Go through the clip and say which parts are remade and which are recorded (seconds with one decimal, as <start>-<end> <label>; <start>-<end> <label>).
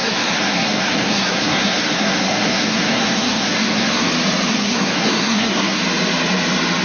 0.0-4.1 remade; 4.1-4.5 recorded; 4.5-5.8 remade; 5.8-6.8 recorded